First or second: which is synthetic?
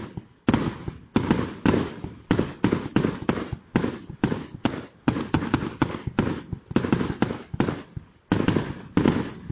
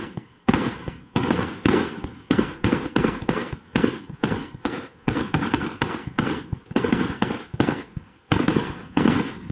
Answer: second